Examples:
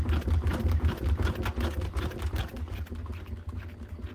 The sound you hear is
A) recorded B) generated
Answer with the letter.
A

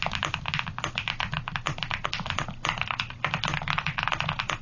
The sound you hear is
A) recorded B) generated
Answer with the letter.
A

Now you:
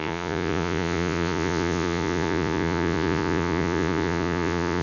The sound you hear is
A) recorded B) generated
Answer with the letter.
B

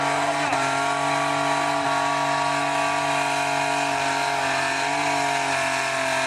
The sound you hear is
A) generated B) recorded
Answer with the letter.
B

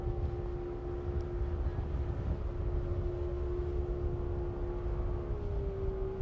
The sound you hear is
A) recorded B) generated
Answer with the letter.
A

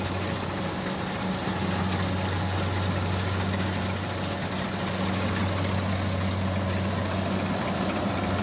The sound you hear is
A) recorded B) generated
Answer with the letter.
A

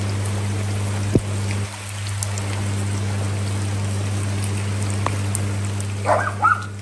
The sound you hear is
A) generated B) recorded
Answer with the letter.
B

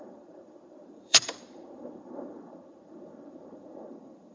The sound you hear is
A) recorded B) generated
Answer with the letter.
B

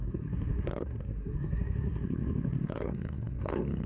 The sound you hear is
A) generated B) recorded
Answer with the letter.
A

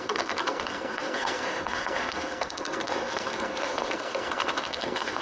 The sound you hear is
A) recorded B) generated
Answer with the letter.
B